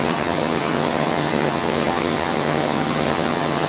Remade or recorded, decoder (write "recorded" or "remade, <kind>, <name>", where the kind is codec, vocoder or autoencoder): remade, vocoder, HiFi-GAN